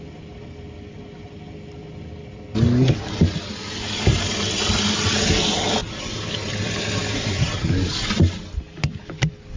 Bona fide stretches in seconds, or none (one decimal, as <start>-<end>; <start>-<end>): 0.0-9.6